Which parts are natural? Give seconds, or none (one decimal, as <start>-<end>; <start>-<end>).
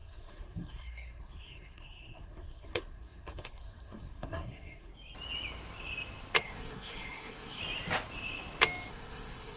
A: 4.9-6.4; 7.6-8.9